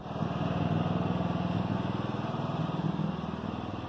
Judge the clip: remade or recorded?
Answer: recorded